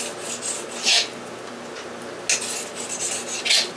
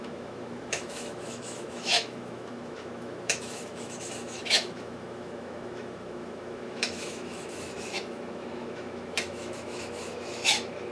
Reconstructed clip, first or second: second